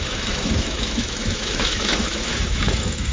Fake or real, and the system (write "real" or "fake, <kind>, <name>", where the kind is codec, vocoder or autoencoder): fake, autoencoder, DAC-VAE